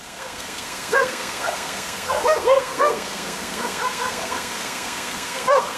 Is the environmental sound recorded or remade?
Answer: remade